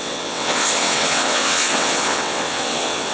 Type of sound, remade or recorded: remade